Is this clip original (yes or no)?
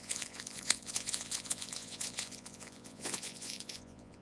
no